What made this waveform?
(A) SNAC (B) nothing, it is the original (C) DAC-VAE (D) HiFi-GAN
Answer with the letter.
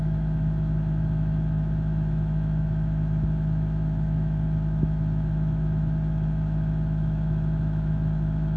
C